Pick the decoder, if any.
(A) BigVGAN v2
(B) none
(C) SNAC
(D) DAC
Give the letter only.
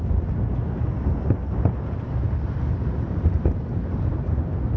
B